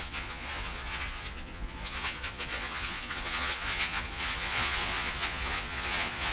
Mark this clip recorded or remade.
remade